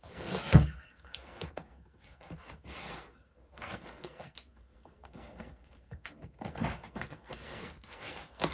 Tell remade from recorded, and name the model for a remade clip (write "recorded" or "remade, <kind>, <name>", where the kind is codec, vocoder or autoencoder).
remade, codec, SNAC